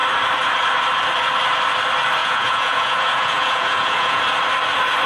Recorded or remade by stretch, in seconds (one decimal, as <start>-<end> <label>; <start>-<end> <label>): 0.0-2.2 recorded; 2.2-4.2 remade; 4.2-5.1 recorded